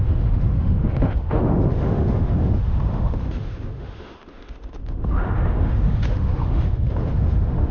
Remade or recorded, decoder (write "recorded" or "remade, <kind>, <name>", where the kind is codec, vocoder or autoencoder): remade, autoencoder, DAC-VAE